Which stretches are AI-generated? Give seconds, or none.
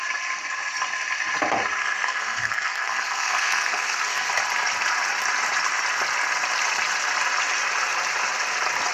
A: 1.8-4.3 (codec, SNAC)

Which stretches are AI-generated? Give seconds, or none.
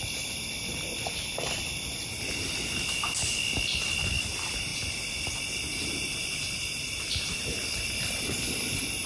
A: none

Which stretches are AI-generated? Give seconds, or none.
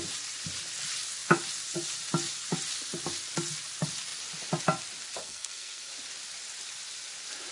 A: 5.2-5.9 (codec, SNAC)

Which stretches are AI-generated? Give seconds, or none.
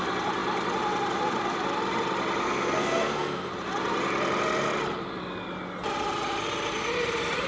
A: 2.4-3.5 (codec, SNAC)